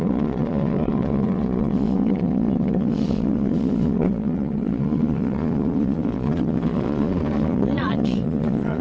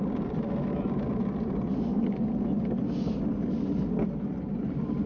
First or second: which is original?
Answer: second